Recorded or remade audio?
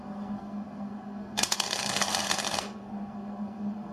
remade